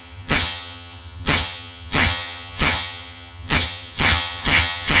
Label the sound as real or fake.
fake